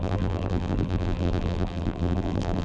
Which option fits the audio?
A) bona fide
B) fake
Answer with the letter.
B